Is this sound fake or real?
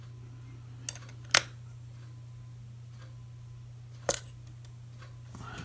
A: real